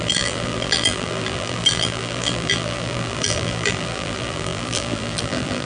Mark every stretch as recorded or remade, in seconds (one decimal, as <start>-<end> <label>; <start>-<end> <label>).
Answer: 0.0-5.7 remade